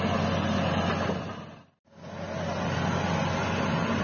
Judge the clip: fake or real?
real